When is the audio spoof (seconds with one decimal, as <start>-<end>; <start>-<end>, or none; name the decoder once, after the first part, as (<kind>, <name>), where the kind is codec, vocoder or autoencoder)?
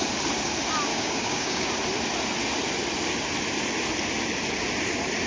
0.9-1.7 (codec, DAC)